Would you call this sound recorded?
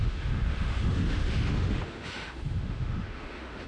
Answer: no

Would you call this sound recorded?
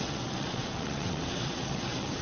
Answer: no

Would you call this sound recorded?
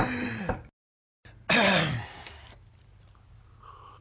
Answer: yes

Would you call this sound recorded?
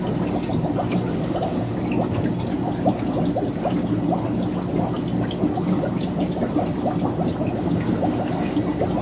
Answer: yes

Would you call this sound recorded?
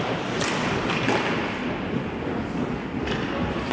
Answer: yes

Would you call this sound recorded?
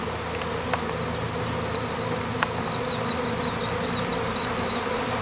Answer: yes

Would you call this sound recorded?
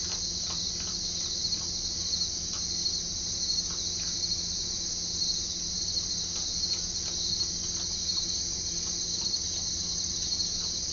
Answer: yes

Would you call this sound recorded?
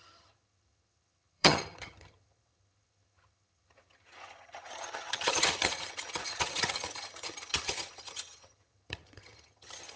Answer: no